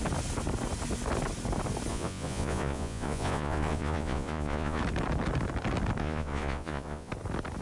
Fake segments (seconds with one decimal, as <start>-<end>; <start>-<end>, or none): 1.9-4.8; 6.0-7.1